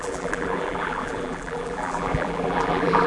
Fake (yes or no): yes